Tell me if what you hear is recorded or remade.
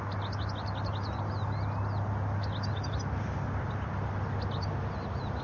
recorded